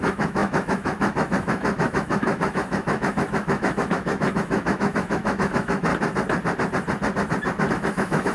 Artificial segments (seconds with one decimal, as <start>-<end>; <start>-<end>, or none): 0.0-5.9; 7.7-8.3